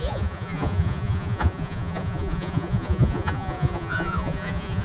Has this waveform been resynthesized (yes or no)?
yes